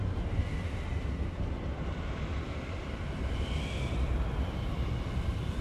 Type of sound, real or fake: real